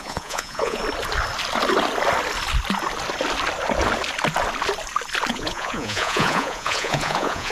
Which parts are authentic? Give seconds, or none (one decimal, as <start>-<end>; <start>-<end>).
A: 0.8-5.3